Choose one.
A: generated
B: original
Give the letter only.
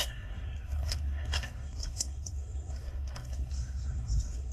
A